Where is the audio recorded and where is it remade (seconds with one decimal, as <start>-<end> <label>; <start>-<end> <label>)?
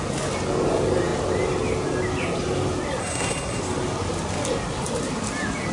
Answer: 0.0-3.0 recorded; 3.0-3.6 remade; 3.6-5.7 recorded